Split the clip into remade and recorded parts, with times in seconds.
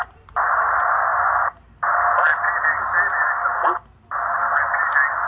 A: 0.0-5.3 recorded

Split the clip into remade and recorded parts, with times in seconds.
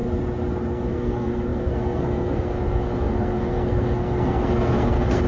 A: 0.0-0.7 recorded; 0.7-5.3 remade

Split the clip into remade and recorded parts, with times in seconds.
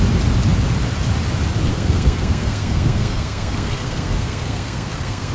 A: 0.0-1.7 recorded; 1.7-5.3 remade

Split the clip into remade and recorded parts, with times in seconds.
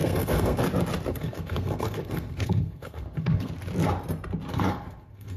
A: 0.0-0.6 remade; 0.6-1.1 recorded; 1.1-3.5 remade; 3.5-4.5 recorded; 4.5-5.4 remade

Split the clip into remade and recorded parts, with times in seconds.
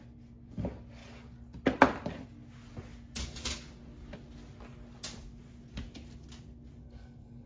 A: 0.0-6.8 recorded; 6.8-7.5 remade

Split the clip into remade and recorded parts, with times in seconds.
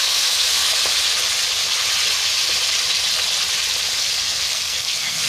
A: 0.0-0.8 remade; 0.8-4.0 recorded; 4.0-5.3 remade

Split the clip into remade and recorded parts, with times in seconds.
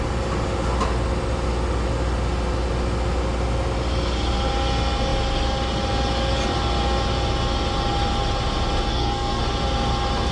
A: 0.0-8.9 recorded; 8.9-9.4 remade; 9.4-10.3 recorded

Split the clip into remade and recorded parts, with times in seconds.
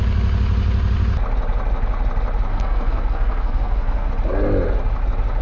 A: 0.0-2.5 recorded; 2.5-4.1 remade; 4.1-5.4 recorded